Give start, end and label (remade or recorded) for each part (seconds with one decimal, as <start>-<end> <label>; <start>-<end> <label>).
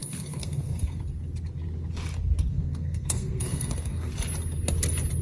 0.0-1.0 remade; 1.0-2.5 recorded; 2.5-4.1 remade; 4.1-5.2 recorded